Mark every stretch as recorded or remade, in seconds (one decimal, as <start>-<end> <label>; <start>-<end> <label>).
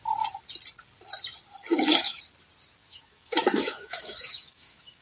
0.0-1.7 recorded; 1.7-2.2 remade; 2.2-2.8 recorded; 2.8-5.0 remade